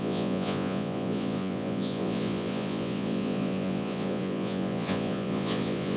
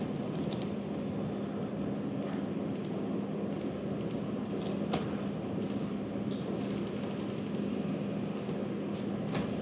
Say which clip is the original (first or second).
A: second